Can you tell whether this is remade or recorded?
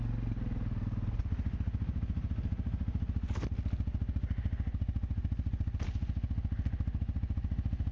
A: recorded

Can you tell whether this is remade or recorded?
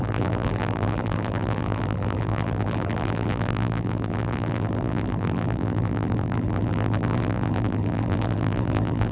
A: remade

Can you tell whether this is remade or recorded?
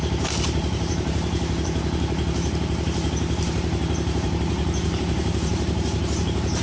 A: remade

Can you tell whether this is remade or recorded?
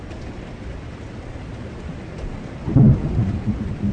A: recorded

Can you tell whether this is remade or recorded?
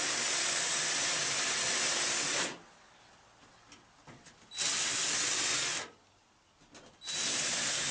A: recorded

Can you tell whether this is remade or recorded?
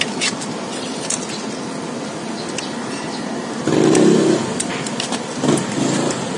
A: recorded